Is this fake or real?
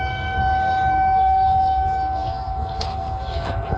fake